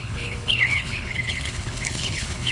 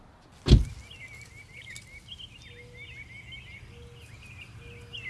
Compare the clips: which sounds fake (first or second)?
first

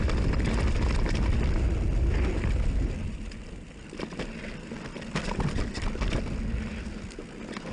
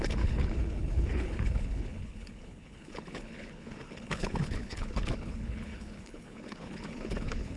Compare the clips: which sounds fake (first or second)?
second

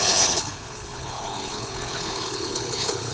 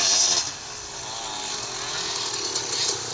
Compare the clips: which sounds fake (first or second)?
first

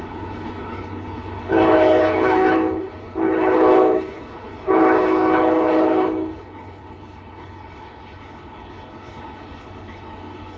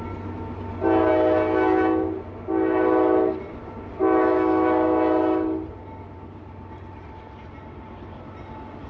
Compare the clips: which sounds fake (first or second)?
first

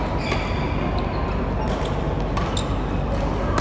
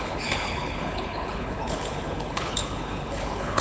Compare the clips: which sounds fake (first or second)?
second